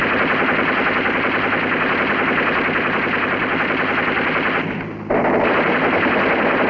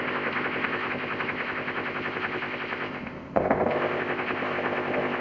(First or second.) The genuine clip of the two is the first